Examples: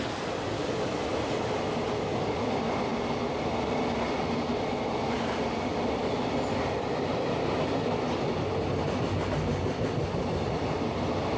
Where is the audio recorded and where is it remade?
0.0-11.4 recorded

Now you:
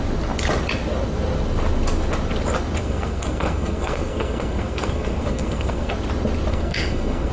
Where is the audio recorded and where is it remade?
0.0-2.8 recorded; 2.8-5.9 remade; 5.9-6.5 recorded; 6.5-7.3 remade

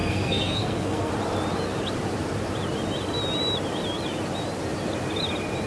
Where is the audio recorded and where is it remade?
0.0-1.1 remade; 1.1-5.7 recorded